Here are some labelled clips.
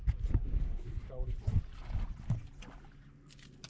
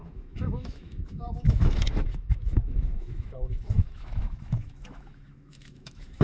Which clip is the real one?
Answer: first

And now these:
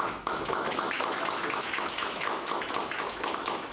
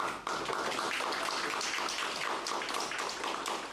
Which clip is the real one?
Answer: second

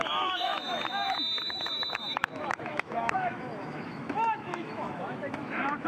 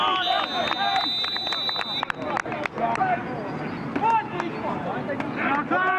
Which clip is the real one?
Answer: second